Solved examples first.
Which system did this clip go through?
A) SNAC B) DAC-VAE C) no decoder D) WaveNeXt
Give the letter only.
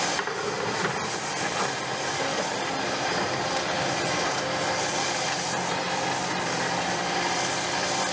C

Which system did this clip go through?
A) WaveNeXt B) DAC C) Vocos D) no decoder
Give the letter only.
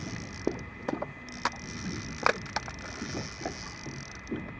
D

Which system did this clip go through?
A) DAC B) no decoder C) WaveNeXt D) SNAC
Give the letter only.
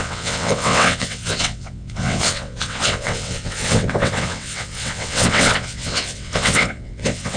C